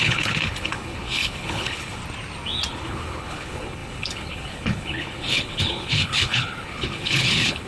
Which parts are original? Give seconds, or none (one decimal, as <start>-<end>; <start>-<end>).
2.0-2.7